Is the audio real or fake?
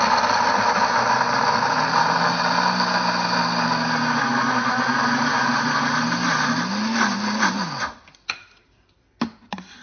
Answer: real